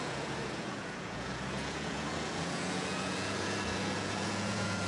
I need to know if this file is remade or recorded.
remade